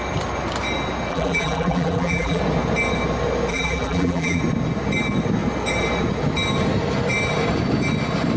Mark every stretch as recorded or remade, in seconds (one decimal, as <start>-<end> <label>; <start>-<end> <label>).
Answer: 0.0-1.1 recorded; 1.1-2.4 remade; 2.4-3.5 recorded; 3.5-4.4 remade; 4.4-8.4 recorded